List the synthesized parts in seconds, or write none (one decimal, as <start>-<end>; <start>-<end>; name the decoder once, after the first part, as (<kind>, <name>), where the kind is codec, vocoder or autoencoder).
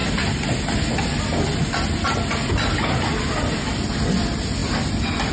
none